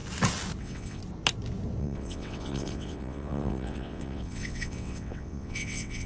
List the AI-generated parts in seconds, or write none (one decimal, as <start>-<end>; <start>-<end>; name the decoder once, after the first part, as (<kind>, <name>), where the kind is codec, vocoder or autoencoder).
0.6-1.0 (vocoder, WaveNeXt); 1.8-6.1